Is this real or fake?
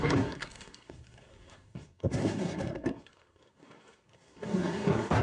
fake